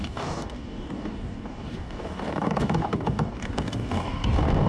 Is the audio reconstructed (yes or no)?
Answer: yes